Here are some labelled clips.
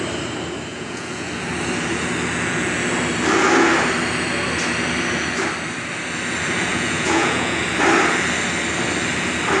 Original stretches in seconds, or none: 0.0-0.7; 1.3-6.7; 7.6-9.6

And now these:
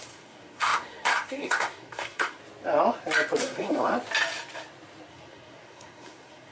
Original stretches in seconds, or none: 2.4-3.4; 3.9-5.1

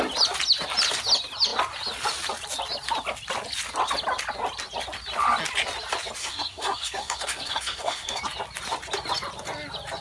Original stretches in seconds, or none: 0.0-6.2; 8.2-10.0

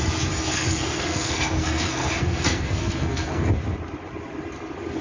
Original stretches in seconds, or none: 0.0-0.5; 3.5-5.0

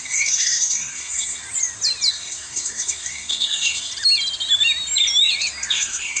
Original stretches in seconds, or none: 1.4-2.1; 3.9-5.7

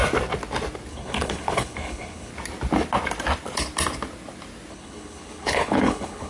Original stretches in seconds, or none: 0.0-0.9; 2.3-4.7

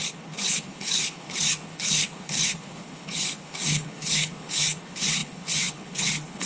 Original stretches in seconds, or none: none

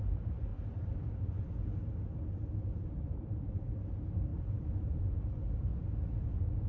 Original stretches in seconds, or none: 0.5-2.8; 5.7-6.7